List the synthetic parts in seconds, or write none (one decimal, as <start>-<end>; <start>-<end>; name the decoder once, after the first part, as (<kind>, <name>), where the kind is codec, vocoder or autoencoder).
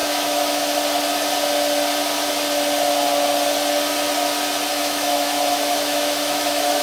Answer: 0.0-0.8 (autoencoder, DAC-VAE); 4.7-6.8